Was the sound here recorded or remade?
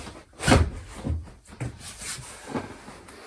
recorded